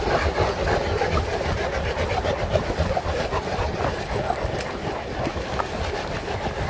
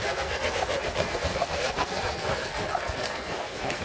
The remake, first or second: second